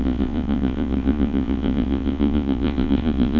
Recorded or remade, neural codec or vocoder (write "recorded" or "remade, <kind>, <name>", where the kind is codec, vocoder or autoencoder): remade, vocoder, Vocos